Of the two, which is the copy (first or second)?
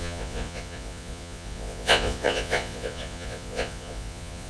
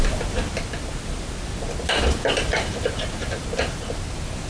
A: first